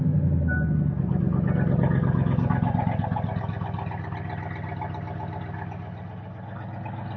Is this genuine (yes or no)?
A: yes